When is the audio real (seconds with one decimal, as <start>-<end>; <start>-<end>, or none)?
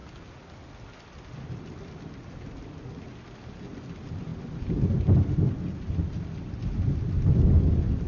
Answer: 0.0-8.1